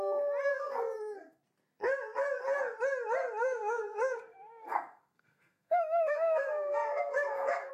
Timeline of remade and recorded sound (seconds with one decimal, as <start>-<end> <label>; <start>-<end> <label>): 0.0-0.5 recorded; 0.5-1.4 remade; 1.4-3.4 recorded; 3.4-7.7 remade